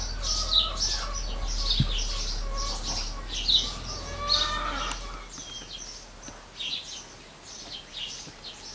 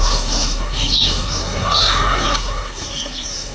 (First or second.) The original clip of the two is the first